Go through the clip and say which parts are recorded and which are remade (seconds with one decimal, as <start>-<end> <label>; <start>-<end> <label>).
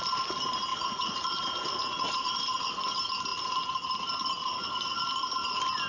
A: 0.0-0.7 recorded; 0.7-2.7 remade; 2.7-4.4 recorded; 4.4-5.0 remade; 5.0-5.9 recorded